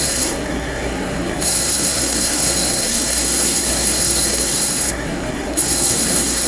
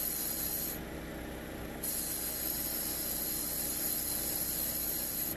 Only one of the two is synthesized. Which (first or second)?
first